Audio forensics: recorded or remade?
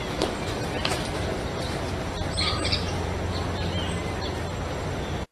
recorded